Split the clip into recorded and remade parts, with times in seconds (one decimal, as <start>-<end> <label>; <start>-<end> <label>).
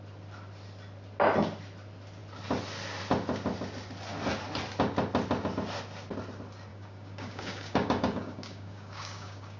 0.0-6.7 recorded; 6.7-9.6 remade